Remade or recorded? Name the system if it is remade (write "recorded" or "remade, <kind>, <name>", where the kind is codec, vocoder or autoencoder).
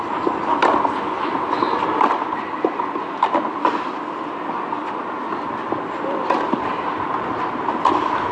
recorded